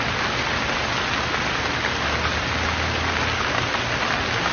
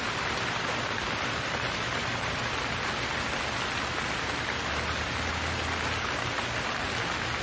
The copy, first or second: second